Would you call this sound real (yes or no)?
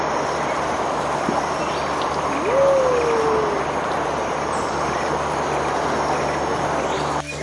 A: yes